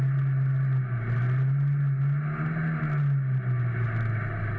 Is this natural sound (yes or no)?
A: yes